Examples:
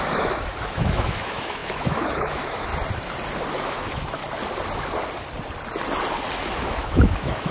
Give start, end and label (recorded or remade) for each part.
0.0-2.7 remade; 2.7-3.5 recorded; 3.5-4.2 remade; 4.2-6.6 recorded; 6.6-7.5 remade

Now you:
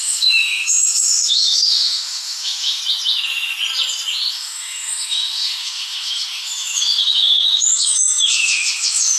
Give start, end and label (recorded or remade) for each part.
0.0-2.8 remade; 2.8-4.3 recorded; 4.3-9.2 remade

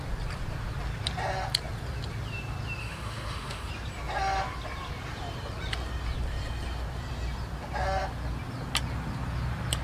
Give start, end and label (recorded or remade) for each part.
0.0-2.8 recorded; 2.8-3.7 remade; 3.7-9.8 recorded

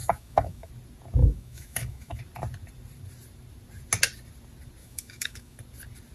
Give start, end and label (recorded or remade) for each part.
0.0-0.7 remade; 0.7-1.2 recorded; 1.2-2.2 remade; 2.2-4.8 recorded; 4.8-5.6 remade; 5.6-6.1 recorded

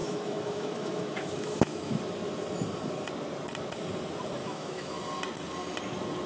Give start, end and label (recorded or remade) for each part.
0.0-2.0 remade; 2.0-4.4 recorded; 4.4-5.0 remade; 5.0-6.3 recorded

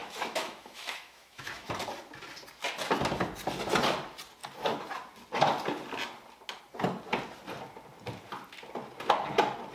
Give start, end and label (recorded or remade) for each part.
0.0-1.7 remade; 1.7-9.7 recorded

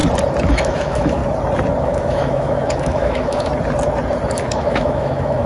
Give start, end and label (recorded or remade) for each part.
0.0-0.5 recorded; 0.5-1.2 remade; 1.2-1.8 recorded; 1.8-3.5 remade; 3.5-4.3 recorded; 4.3-5.5 remade

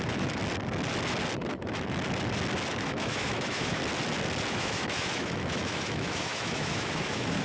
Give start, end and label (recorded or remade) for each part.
0.0-0.4 remade; 0.4-2.7 recorded; 2.7-3.8 remade; 3.8-4.5 recorded; 4.5-7.4 remade